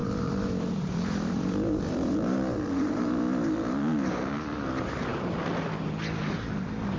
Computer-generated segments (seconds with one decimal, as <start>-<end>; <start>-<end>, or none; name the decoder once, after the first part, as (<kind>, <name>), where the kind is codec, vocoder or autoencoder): 0.0-3.1 (vocoder, BigVGAN v2)